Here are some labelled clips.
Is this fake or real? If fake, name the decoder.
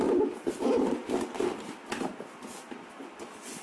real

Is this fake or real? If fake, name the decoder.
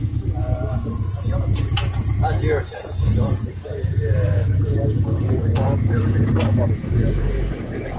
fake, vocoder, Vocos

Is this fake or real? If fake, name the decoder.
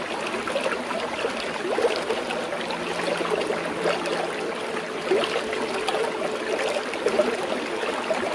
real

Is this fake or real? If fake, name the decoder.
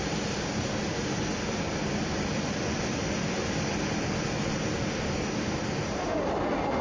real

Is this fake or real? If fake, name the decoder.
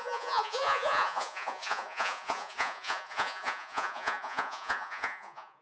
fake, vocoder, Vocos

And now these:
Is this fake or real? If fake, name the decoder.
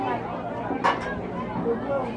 real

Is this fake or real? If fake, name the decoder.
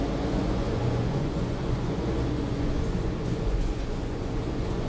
fake, vocoder, Vocos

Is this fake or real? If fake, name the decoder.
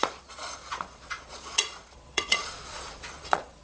fake, vocoder, Vocos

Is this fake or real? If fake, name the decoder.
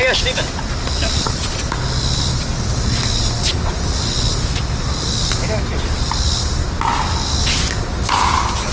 real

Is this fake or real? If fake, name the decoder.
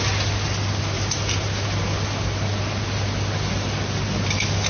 real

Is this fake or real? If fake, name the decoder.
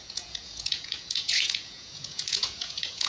fake, vocoder, Vocos